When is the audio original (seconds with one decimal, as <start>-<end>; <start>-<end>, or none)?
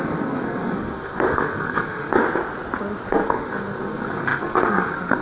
2.2-3.1